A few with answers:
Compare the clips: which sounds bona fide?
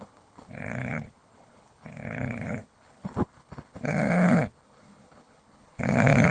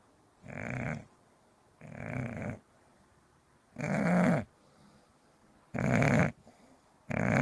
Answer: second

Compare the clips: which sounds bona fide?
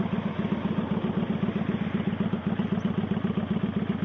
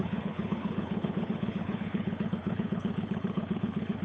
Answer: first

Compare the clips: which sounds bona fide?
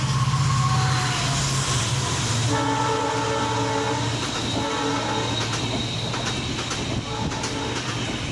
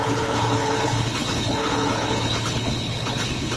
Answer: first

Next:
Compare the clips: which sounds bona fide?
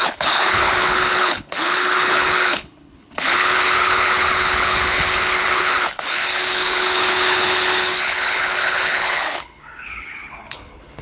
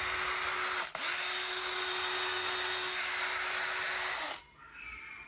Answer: second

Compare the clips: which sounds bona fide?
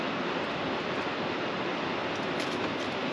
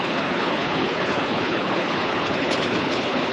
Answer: first